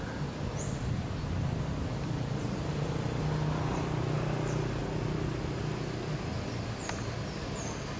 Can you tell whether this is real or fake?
real